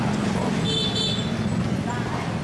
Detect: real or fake real